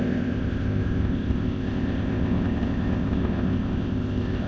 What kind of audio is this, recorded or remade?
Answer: remade